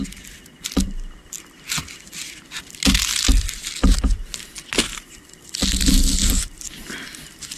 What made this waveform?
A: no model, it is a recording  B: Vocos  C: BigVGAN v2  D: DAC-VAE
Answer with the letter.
A